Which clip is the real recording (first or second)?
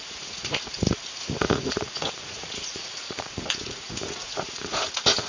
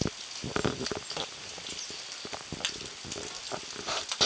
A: second